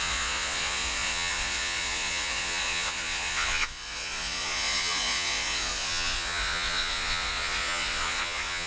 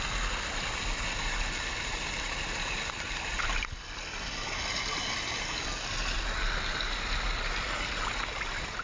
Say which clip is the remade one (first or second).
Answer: first